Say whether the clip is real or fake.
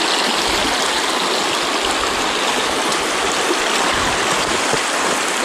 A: real